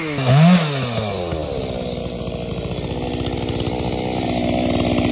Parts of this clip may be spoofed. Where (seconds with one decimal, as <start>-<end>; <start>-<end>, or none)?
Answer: none